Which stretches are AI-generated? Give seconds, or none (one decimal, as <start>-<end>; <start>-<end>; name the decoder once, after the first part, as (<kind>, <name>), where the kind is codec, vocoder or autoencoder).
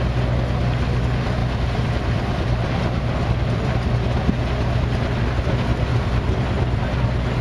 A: 1.4-3.9 (vocoder, BigVGAN v2); 5.9-6.8